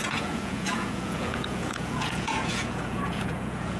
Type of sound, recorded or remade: remade